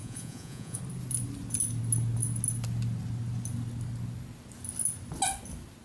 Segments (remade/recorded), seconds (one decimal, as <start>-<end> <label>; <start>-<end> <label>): 0.0-0.8 remade; 0.8-5.8 recorded